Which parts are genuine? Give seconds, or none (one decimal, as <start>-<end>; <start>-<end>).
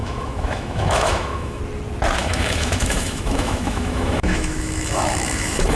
1.6-2.2